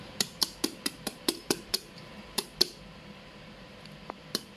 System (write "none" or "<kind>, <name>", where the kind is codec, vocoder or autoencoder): vocoder, BigVGAN v2